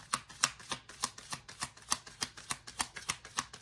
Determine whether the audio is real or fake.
real